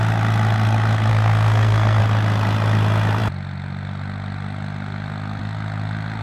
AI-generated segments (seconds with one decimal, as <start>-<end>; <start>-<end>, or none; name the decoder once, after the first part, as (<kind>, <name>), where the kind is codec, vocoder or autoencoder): 1.1-2.0 (codec, SNAC)